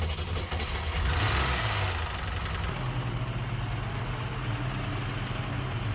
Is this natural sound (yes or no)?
yes